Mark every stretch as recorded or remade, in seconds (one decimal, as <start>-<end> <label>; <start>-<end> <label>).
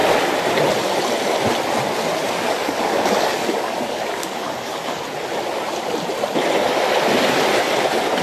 0.0-2.2 recorded; 2.2-5.0 remade; 5.0-8.2 recorded